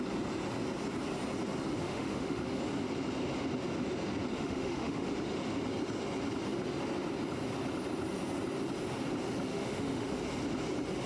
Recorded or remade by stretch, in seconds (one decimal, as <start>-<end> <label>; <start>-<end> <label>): 0.0-1.8 recorded; 1.8-2.6 remade; 2.6-4.3 recorded; 4.3-5.1 remade; 5.1-9.5 recorded; 9.5-10.2 remade; 10.2-11.1 recorded